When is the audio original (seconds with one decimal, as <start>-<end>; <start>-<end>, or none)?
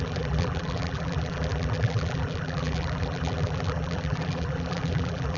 none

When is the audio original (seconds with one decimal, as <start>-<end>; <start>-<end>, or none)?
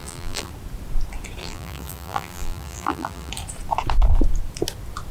0.5-1.4; 3.3-5.1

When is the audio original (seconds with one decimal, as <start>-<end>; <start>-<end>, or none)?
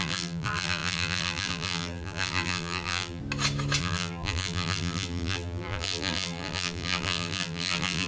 3.2-3.8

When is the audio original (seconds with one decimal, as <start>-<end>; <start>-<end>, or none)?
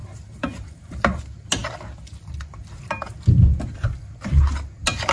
1.2-5.1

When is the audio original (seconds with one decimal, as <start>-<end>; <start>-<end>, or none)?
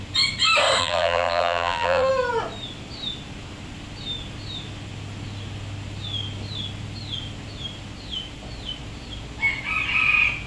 0.0-0.8; 2.1-10.5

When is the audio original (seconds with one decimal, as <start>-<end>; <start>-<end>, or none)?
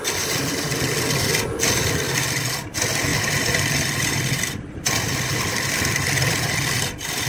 0.0-3.1; 6.8-7.3